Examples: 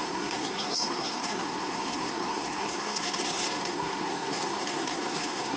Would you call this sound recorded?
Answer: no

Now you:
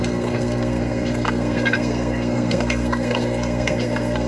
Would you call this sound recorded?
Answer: no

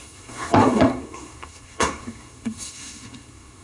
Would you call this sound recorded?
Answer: no